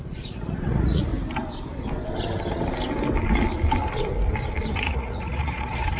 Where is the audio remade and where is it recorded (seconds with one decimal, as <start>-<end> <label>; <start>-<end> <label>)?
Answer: 0.0-1.1 remade; 1.1-4.7 recorded; 4.7-6.0 remade